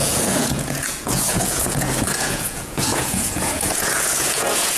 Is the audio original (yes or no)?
no